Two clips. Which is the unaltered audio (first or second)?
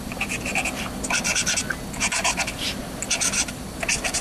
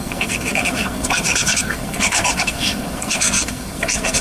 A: first